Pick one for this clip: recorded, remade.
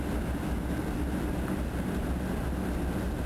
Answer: recorded